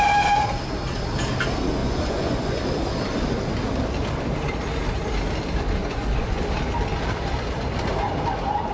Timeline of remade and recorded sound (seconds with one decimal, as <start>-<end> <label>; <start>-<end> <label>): 0.0-1.8 recorded; 1.8-2.6 remade; 2.6-5.8 recorded; 5.8-6.4 remade; 6.4-8.7 recorded